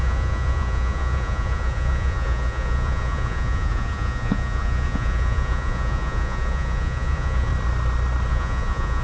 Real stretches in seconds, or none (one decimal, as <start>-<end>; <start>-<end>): 7.5-8.3